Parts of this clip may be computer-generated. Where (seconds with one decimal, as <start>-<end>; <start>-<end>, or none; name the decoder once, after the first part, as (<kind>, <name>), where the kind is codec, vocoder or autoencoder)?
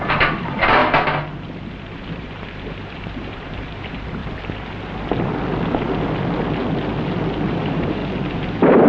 0.0-0.8 (vocoder, BigVGAN v2); 1.7-4.2; 7.5-8.0; 8.5-8.9